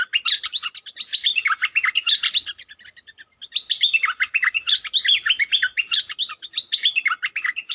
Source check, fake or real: real